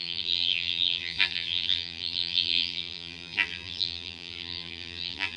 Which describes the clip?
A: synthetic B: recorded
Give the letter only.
A